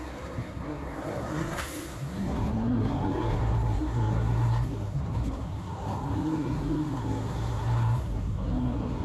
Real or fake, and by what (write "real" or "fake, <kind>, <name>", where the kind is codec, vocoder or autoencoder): fake, codec, SNAC